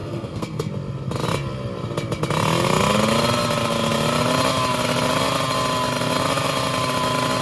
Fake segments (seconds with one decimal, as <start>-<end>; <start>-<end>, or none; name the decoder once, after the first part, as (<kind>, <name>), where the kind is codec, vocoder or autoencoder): 0.0-0.7 (codec, SNAC)